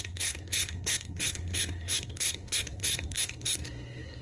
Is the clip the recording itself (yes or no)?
no